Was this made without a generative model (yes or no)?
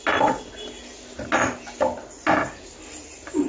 yes